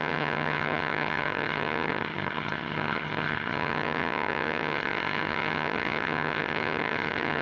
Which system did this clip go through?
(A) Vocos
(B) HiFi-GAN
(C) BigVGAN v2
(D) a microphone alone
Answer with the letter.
B